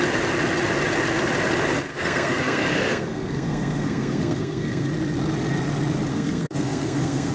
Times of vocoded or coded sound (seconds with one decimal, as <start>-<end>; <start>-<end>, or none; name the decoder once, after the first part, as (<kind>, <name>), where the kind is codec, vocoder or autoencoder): 1.9-4.9 (codec, SNAC); 6.1-7.3

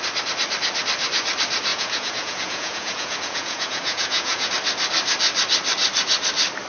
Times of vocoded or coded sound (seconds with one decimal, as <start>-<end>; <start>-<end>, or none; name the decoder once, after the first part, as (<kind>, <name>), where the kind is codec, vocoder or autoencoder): 1.7-4.5 (vocoder, Vocos)

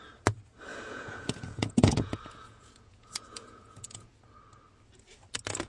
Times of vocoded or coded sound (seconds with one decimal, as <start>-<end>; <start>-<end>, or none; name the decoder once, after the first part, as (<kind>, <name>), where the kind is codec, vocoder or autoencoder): 0.7-4.1 (vocoder, Vocos)

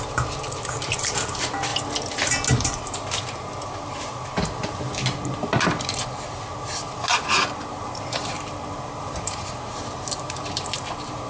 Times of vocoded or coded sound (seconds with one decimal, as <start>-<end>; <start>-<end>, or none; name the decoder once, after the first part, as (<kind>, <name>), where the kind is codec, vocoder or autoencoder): 0.0-1.7 (vocoder, BigVGAN v2); 2.5-4.3; 7.7-11.3